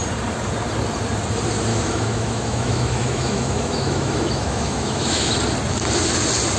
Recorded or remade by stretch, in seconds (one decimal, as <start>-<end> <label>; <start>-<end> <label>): 0.0-1.7 recorded; 1.7-5.3 remade; 5.3-6.6 recorded